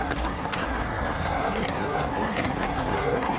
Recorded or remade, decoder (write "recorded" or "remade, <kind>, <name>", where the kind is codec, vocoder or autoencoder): remade, codec, SNAC